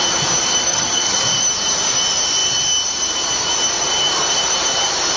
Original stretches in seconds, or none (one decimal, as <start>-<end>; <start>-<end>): 0.0-0.7; 1.2-5.2